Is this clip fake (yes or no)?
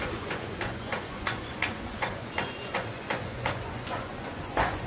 yes